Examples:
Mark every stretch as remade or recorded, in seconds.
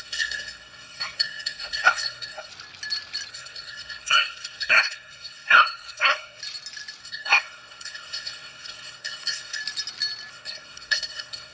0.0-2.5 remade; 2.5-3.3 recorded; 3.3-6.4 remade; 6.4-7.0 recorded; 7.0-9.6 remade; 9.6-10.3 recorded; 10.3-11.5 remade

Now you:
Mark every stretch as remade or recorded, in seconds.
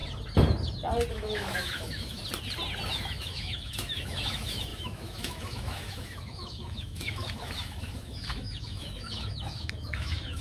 0.0-1.1 recorded; 1.1-2.2 remade; 2.2-2.9 recorded; 2.9-10.4 remade